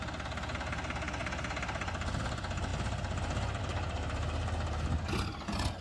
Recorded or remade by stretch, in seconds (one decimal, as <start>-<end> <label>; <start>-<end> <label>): 0.0-5.8 recorded